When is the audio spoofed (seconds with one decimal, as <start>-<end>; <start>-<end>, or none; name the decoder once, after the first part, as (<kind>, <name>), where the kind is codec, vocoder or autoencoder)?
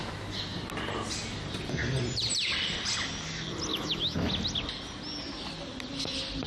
3.7-4.3 (autoencoder, DAC-VAE)